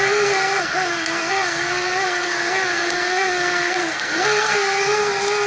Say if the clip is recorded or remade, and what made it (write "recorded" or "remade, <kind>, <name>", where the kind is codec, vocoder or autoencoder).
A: remade, codec, SNAC